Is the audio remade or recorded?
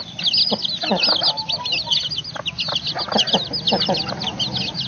recorded